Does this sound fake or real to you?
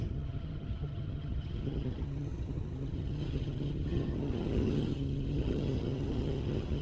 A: fake